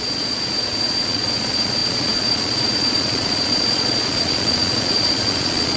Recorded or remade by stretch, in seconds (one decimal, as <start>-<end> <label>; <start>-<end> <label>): 0.0-5.8 remade